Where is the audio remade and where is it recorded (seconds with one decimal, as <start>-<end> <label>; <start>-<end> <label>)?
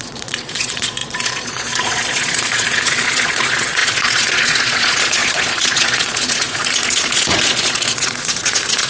0.0-8.9 remade